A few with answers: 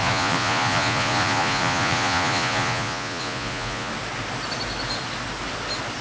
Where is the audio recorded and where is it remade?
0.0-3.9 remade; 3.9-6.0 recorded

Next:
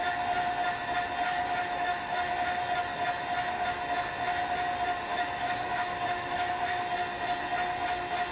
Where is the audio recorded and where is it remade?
0.0-1.3 recorded; 1.3-2.3 remade; 2.3-5.1 recorded; 5.1-6.5 remade; 6.5-8.3 recorded

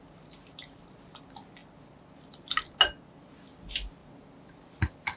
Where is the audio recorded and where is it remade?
0.0-5.2 recorded